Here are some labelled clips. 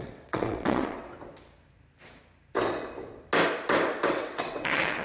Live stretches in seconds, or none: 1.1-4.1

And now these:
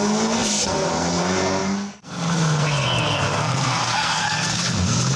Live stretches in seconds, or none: none

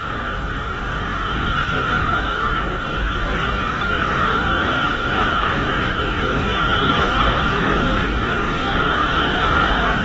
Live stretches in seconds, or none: none